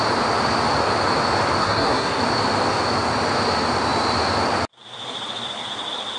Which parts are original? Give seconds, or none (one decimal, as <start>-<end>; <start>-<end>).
0.0-1.6; 2.2-6.2